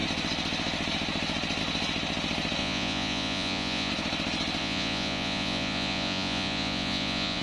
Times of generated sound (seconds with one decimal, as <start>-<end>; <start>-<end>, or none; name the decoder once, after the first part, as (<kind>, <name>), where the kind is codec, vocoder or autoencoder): 2.6-3.9 (vocoder, Vocos); 4.6-7.4